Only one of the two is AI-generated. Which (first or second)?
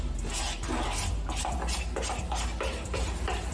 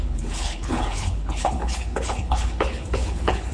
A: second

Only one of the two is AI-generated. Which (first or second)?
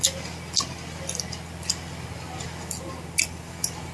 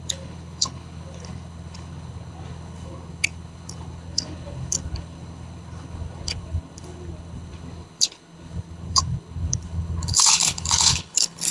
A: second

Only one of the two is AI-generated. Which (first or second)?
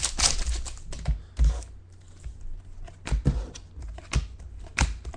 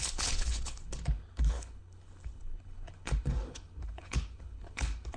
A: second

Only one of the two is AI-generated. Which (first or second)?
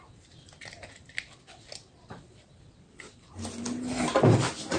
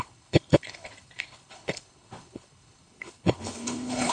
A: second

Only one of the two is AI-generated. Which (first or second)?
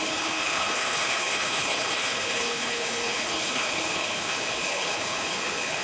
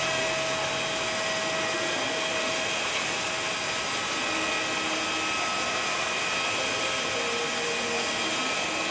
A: first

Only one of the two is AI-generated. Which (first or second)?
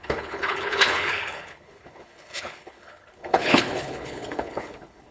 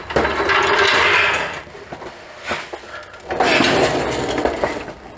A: first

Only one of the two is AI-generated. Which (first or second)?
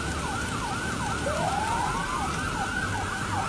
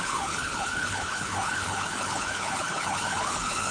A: second